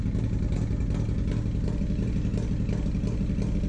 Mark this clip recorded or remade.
recorded